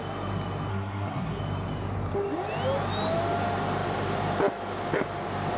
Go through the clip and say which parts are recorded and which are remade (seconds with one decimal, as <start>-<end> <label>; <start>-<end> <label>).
0.0-0.7 recorded; 0.7-1.4 remade; 1.4-5.6 recorded